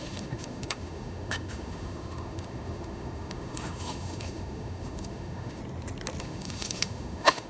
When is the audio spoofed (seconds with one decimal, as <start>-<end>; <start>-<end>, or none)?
0.0-5.6; 6.2-7.5